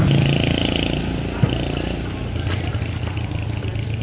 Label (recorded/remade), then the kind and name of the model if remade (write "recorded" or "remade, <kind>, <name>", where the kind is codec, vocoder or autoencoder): recorded